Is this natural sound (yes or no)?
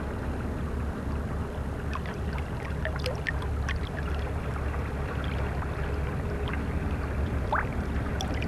yes